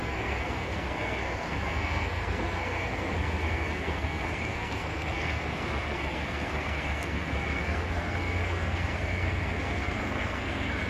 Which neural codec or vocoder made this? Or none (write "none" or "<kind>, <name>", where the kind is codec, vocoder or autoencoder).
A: codec, SNAC